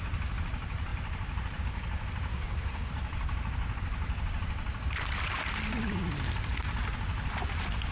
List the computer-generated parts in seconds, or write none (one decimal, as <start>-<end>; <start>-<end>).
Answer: 2.3-2.9